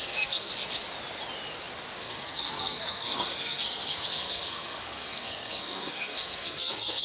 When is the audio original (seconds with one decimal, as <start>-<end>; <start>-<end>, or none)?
0.5-2.0